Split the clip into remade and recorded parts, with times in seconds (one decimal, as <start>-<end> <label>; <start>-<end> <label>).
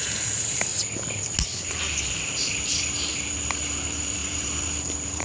0.0-0.7 remade; 0.7-2.3 recorded; 2.3-5.2 remade